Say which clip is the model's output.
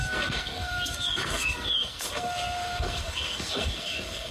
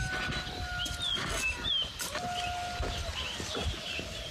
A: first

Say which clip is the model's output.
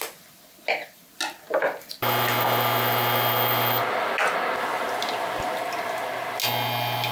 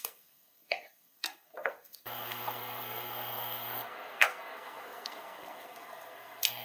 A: second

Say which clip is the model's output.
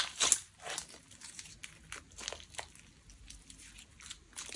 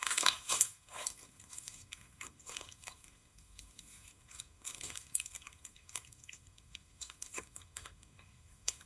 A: second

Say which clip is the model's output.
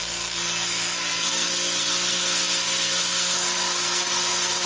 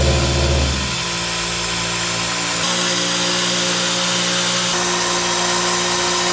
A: first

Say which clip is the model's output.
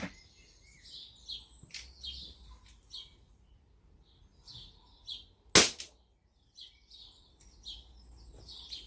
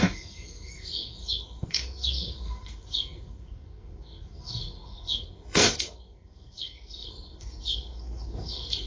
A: second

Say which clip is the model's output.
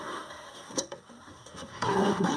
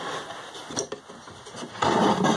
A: first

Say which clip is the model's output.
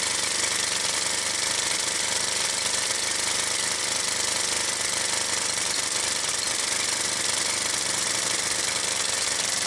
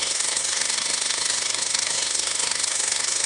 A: second